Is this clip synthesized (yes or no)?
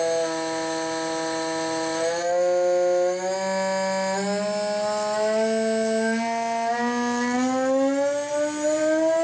no